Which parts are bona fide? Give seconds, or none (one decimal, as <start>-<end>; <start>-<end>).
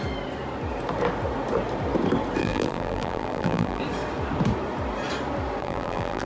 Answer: 0.0-2.4; 3.8-5.6